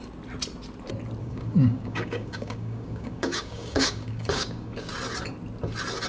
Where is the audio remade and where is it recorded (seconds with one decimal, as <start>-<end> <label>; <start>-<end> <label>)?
0.0-1.2 recorded; 1.2-4.9 remade; 4.9-6.1 recorded